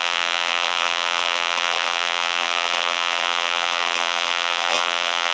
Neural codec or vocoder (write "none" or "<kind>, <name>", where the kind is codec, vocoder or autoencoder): vocoder, BigVGAN v2